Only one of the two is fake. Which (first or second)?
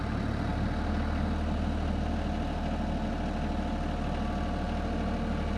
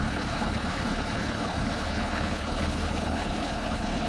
second